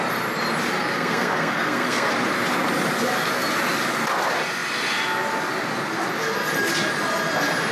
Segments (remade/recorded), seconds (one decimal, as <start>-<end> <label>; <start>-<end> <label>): 0.0-0.9 recorded; 0.9-2.1 remade; 2.1-7.7 recorded